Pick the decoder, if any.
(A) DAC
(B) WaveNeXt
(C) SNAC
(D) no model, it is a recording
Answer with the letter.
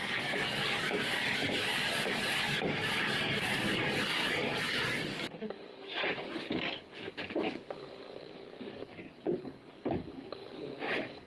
A